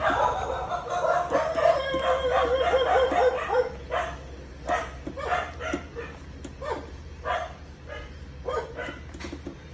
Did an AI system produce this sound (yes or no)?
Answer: no